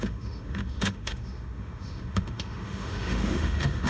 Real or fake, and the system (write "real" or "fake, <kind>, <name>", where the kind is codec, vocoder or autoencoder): fake, autoencoder, DAC-VAE